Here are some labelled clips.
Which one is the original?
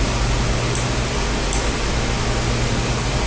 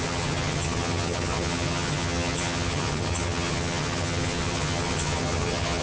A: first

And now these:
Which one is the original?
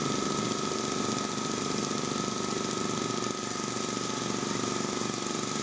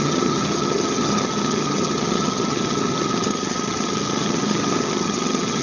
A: first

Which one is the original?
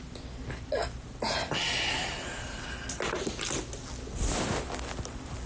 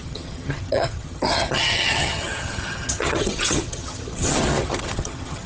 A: first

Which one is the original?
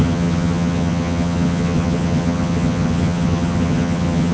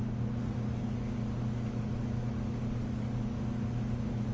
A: second